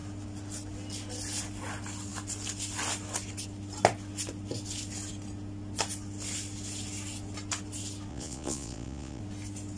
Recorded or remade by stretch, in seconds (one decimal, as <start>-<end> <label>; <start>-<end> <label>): 0.0-8.1 recorded; 8.1-9.2 remade; 9.2-9.8 recorded

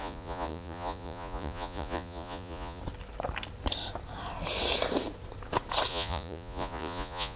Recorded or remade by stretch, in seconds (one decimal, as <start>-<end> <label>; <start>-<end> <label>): 0.0-2.8 remade; 2.8-5.9 recorded; 5.9-7.4 remade